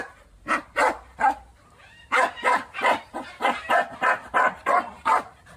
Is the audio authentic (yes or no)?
no